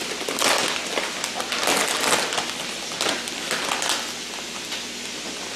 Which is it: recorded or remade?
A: recorded